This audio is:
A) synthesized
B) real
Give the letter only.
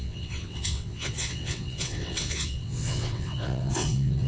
A